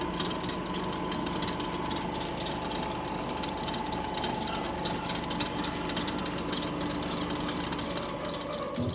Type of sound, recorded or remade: recorded